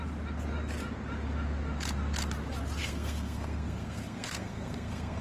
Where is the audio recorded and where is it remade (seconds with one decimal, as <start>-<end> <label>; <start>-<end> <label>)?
0.0-2.8 recorded; 2.8-5.2 remade